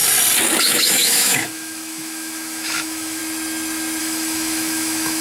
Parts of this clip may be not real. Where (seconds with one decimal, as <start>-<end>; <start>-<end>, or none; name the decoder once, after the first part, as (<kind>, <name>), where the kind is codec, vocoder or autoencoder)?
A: 0.6-3.2 (autoencoder, DAC-VAE); 4.0-5.2